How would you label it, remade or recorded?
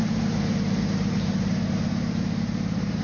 remade